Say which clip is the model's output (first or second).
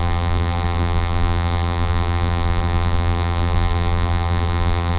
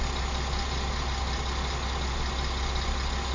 first